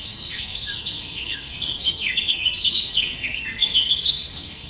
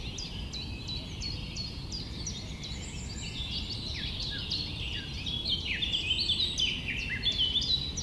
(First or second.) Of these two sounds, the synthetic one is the first